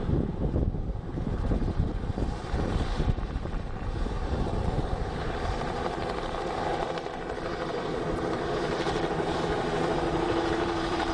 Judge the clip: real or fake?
fake